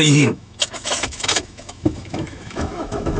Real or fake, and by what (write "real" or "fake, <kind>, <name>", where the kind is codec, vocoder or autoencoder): fake, autoencoder, DAC-VAE